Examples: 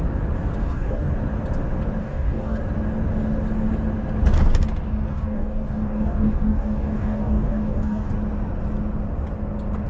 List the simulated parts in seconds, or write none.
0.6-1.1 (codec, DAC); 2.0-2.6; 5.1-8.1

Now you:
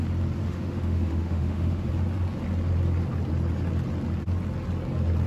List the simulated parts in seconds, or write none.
0.4-1.9 (autoencoder, DAC-VAE)

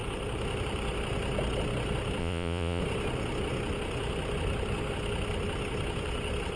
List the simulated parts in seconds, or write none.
2.2-2.8 (vocoder, Vocos)

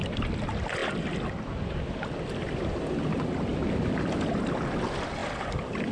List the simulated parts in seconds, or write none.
none

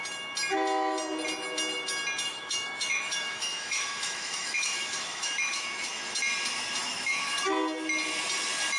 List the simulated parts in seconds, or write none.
2.3-6.2 (autoencoder, DAC-VAE); 6.8-7.4

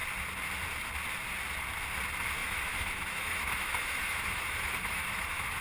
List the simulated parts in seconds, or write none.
2.4-5.6 (autoencoder, DAC-VAE)